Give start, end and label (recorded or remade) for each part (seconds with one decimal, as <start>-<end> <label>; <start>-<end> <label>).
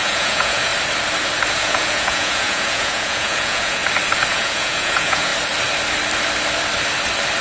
0.0-0.7 remade; 0.7-1.5 recorded; 1.5-3.8 remade; 3.8-4.3 recorded; 4.3-5.3 remade; 5.3-7.4 recorded